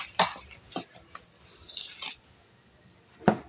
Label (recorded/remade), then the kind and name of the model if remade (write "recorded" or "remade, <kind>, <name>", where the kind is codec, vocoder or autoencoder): recorded